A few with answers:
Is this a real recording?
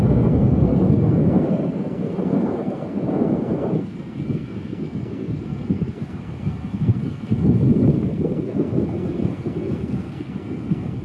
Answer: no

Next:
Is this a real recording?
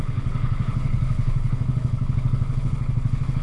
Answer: no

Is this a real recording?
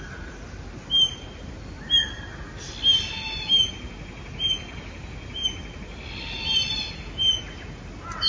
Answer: yes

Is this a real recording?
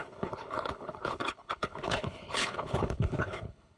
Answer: no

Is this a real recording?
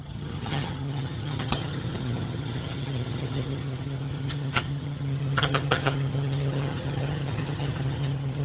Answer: no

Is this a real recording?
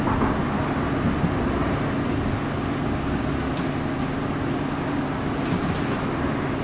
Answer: yes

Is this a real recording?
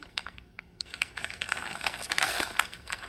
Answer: no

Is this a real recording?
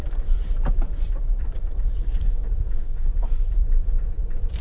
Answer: no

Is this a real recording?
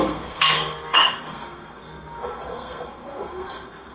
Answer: no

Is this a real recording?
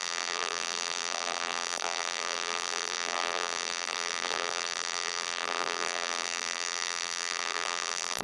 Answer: no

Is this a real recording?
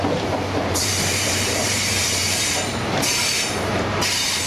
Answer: no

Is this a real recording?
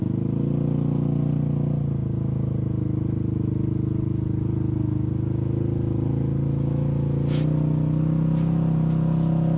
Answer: yes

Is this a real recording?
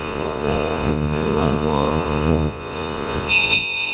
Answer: no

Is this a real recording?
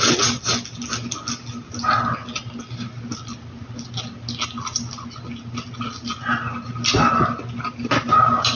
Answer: yes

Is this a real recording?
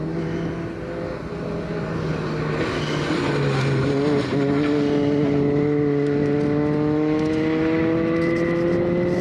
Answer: yes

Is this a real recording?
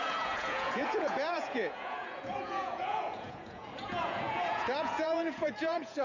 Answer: no